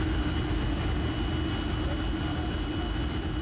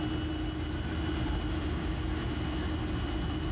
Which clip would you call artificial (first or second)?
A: first